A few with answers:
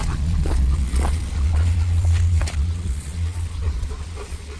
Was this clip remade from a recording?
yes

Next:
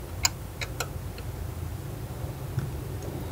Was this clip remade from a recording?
no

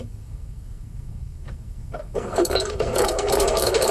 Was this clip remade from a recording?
yes